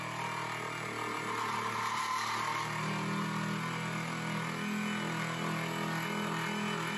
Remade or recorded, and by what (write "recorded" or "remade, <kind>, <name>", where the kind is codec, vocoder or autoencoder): recorded